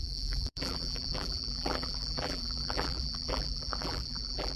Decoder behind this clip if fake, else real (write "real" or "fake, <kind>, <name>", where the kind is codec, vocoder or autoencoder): fake, vocoder, BigVGAN v2